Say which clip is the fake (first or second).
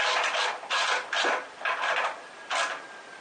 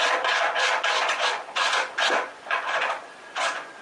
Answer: second